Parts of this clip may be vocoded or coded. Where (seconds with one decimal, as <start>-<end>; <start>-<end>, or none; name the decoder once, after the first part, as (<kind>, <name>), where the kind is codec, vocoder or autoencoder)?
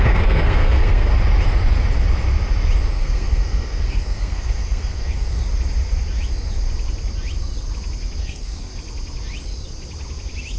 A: 0.0-1.1 (codec, SNAC); 2.9-5.4; 8.2-8.7